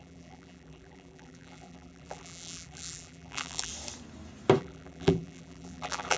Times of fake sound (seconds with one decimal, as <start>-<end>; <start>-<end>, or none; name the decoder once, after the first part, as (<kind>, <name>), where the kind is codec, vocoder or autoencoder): 0.0-3.7 (vocoder, BigVGAN v2); 4.6-6.2